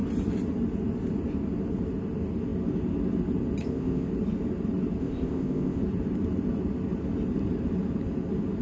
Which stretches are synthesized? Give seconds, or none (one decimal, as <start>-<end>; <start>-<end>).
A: 3.6-4.1; 5.0-5.8